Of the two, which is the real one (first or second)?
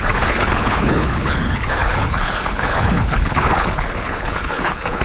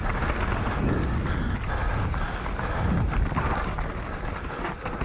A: second